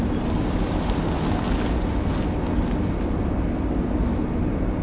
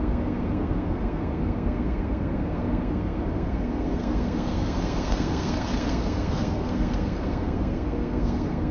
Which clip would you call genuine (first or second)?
first